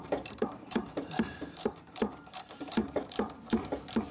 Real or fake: fake